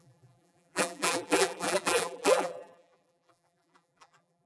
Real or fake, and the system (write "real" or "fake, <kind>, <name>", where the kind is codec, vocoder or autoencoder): fake, vocoder, BigVGAN v2